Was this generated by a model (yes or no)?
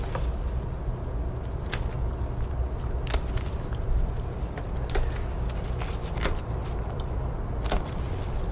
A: no